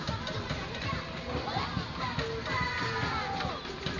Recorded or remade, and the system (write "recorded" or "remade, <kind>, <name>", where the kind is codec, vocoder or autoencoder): recorded